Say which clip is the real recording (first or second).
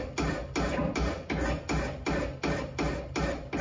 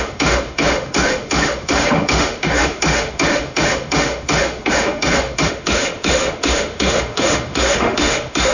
first